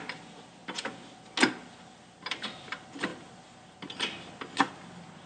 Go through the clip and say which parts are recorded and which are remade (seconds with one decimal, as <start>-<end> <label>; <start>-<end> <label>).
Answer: 0.0-5.3 recorded